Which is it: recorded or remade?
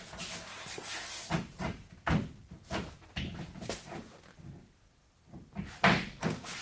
recorded